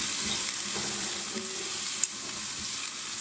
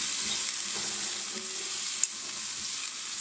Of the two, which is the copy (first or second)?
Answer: first